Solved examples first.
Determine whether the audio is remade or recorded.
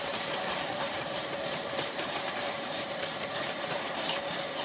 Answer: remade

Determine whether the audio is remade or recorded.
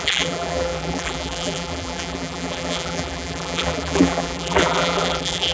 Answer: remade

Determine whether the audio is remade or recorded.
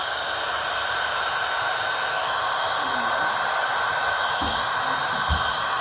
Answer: recorded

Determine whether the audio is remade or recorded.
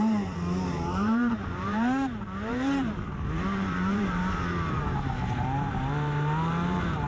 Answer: remade